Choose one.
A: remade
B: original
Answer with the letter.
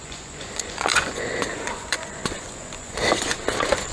A